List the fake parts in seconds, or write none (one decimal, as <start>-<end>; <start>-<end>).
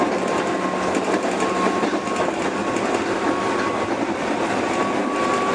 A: none